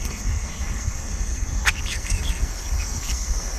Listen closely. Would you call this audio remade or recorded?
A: remade